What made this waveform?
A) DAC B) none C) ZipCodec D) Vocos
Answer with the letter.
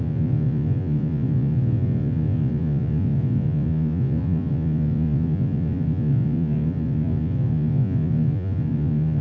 D